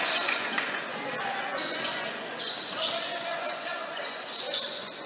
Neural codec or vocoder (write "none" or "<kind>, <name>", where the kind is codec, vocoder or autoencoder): vocoder, Vocos